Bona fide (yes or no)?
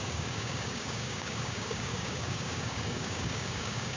no